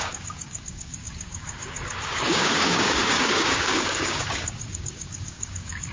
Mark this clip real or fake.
fake